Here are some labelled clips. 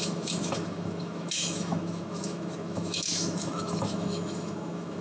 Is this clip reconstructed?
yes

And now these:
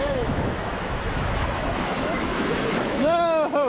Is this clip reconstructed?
yes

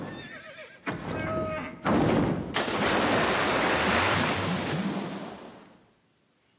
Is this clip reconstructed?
no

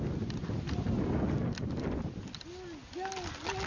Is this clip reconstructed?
no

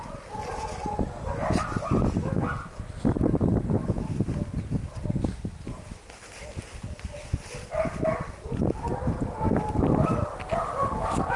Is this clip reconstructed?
no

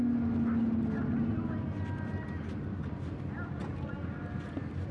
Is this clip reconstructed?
no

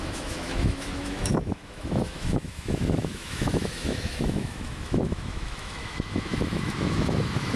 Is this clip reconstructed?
yes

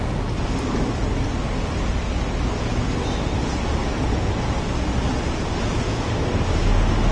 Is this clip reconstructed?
no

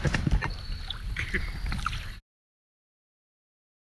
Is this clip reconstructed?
no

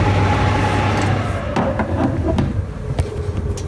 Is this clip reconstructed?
no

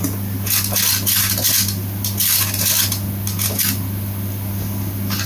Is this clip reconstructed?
no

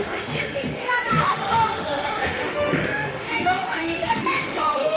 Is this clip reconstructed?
yes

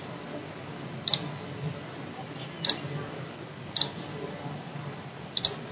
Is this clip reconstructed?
no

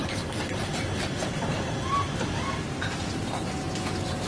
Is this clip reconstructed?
no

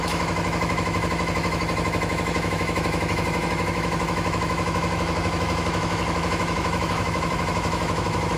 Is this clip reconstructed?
yes